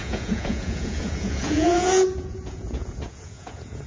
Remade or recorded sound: remade